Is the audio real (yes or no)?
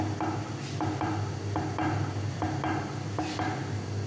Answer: yes